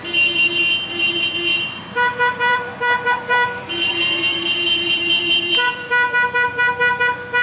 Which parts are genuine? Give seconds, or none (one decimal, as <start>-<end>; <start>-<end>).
0.0-1.5; 5.9-7.4